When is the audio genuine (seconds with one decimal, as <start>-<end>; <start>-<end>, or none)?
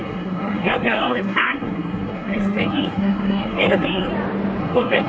4.1-4.6